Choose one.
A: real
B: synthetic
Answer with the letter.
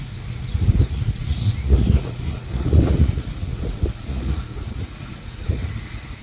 B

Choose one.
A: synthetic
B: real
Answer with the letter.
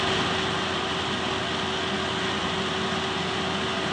B